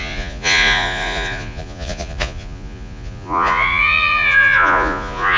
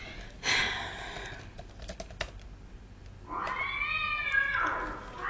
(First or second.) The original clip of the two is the second